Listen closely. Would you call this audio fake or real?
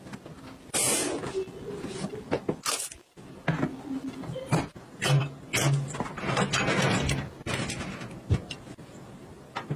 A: real